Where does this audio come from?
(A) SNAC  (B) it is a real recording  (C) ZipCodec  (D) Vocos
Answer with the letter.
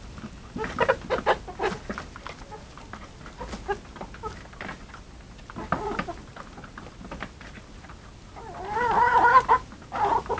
B